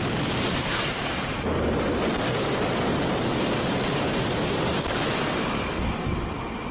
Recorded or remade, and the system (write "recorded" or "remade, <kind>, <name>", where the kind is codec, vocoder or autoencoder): recorded